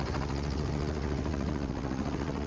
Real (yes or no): no